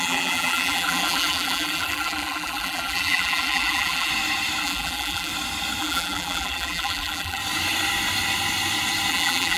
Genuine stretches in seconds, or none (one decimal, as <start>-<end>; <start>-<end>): 4.1-4.6; 5.3-5.8; 7.4-9.1